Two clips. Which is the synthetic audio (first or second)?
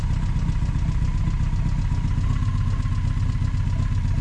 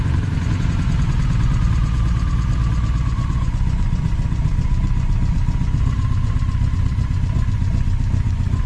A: second